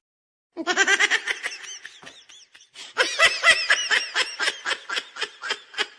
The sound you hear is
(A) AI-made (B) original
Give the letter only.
B